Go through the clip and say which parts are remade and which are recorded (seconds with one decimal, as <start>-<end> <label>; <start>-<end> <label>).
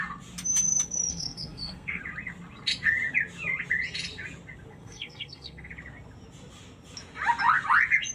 0.0-1.1 recorded; 1.1-2.0 remade; 2.0-4.7 recorded; 4.7-5.7 remade; 5.7-8.1 recorded